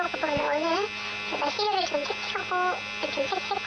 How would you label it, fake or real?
real